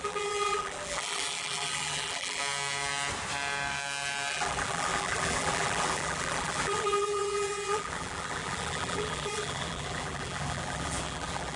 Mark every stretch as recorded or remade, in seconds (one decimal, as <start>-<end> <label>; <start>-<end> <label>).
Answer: 0.0-2.4 remade; 2.4-4.3 recorded; 4.3-11.6 remade